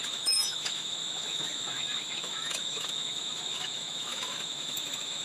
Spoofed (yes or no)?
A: yes